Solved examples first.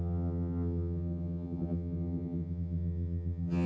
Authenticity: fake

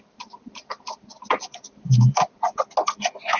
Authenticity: real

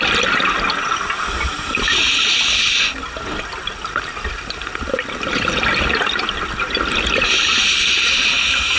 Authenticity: real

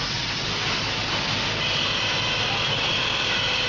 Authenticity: real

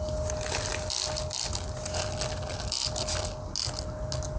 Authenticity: real